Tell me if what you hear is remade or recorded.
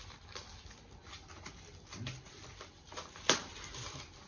recorded